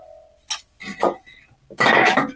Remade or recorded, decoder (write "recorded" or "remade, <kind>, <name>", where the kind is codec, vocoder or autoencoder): recorded